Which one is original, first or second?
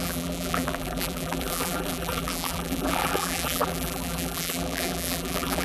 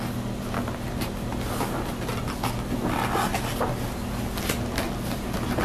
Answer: second